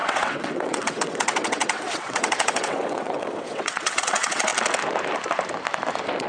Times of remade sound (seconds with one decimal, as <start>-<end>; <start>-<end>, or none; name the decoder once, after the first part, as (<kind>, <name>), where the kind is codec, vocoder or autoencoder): 0.0-4.5 (vocoder, WaveNeXt)